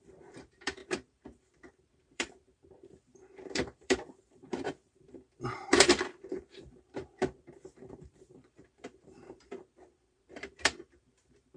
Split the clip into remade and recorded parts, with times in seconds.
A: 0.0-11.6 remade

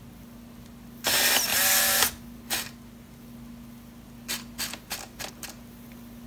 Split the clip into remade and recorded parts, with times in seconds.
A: 0.0-6.3 recorded

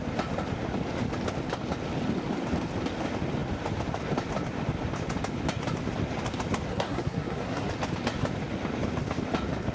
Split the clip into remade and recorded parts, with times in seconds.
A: 0.0-6.7 recorded; 6.7-7.7 remade; 7.7-9.7 recorded

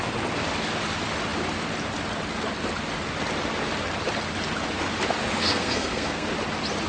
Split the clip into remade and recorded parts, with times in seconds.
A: 0.0-5.4 recorded; 5.4-6.3 remade; 6.3-6.9 recorded

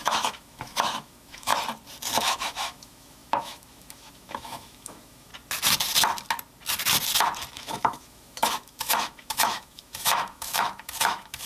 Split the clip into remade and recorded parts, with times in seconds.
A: 0.0-1.5 remade; 1.5-2.2 recorded; 2.2-5.3 remade; 5.3-7.5 recorded; 7.5-11.5 remade

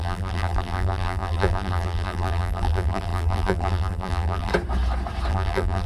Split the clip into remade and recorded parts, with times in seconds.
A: 0.0-4.5 remade; 4.5-5.3 recorded; 5.3-5.9 remade